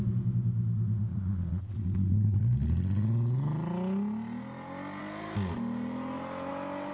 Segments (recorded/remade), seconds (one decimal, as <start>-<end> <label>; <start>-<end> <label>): 0.0-1.1 recorded; 1.1-2.4 remade; 2.4-6.9 recorded